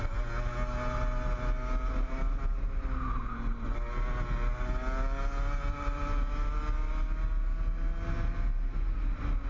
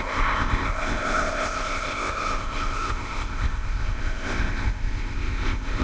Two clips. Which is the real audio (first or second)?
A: first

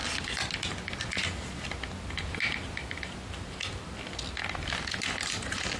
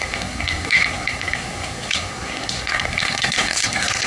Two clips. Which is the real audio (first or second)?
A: first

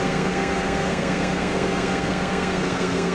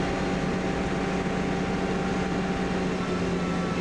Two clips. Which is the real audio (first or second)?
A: second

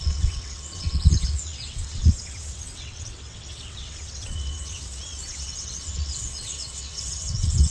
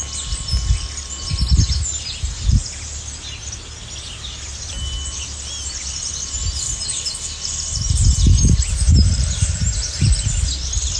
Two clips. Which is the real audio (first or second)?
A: second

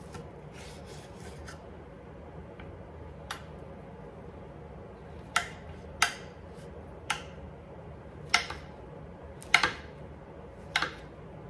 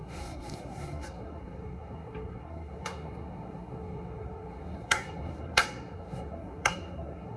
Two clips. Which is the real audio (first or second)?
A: first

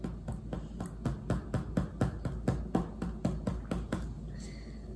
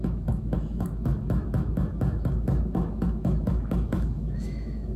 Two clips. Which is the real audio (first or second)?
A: first